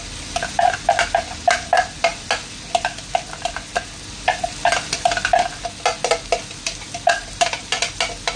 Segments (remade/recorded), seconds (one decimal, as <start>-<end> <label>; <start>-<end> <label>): 0.0-8.4 recorded